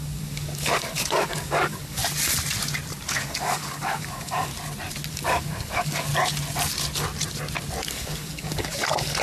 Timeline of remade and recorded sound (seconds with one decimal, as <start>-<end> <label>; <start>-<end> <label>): 0.0-2.0 remade; 2.0-3.1 recorded; 3.1-4.5 remade; 4.5-5.1 recorded; 5.1-6.1 remade; 6.1-7.9 recorded; 7.9-9.2 remade